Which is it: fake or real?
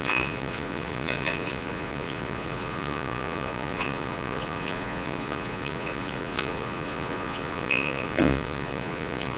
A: fake